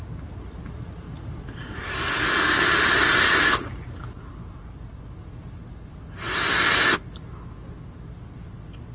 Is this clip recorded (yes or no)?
yes